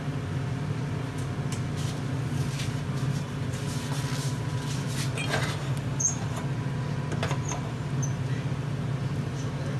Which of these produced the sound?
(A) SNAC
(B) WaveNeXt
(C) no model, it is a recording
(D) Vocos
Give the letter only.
C